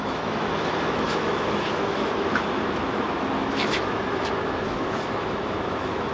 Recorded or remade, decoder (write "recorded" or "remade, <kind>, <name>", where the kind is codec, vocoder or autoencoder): remade, autoencoder, DAC-VAE